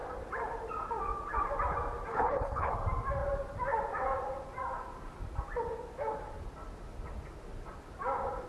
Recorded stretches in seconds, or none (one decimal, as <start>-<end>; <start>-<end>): 0.0-2.1; 2.7-8.5